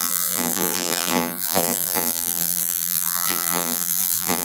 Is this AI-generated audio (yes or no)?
yes